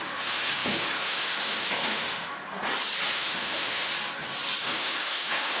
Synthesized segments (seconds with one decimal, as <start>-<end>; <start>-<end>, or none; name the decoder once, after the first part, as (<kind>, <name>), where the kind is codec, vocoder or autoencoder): 0.0-2.3 (autoencoder, DAC-VAE); 3.1-3.9; 4.6-5.6